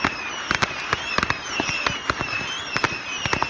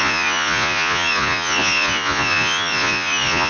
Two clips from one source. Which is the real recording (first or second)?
first